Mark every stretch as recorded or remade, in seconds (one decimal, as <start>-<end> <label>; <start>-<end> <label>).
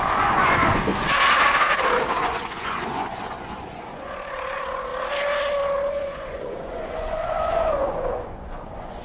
0.0-0.9 remade; 0.9-2.1 recorded; 2.1-4.9 remade; 4.9-5.9 recorded; 5.9-9.0 remade